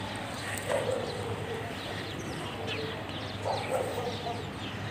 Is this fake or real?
real